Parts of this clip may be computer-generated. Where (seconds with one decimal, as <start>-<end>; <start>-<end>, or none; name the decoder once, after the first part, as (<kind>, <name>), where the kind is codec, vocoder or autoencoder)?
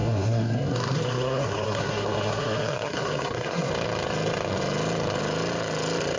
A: 0.0-3.7 (codec, SNAC)